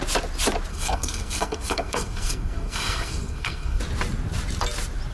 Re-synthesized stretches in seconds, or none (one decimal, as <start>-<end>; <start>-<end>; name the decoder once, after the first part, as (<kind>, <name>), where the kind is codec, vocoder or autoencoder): 0.7-3.8 (codec, SNAC)